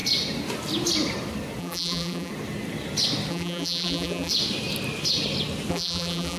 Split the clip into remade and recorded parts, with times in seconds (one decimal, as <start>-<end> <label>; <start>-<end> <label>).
0.0-1.6 recorded; 1.6-2.3 remade; 2.3-3.3 recorded; 3.3-4.3 remade; 4.3-5.7 recorded; 5.7-6.4 remade